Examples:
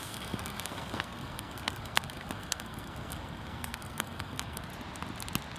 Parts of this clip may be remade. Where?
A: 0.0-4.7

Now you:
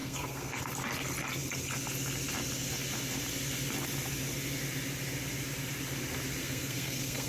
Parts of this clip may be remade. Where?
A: 0.0-0.6; 6.4-7.3